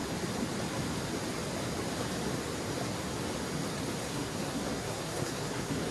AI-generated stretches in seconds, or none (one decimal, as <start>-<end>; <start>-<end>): 4.0-5.9